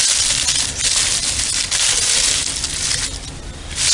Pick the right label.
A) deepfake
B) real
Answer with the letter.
B